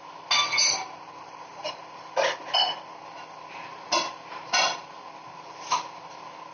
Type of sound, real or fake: real